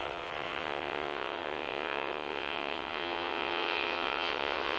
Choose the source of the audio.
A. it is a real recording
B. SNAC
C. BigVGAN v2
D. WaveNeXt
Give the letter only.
D